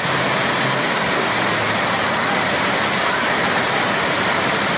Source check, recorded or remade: recorded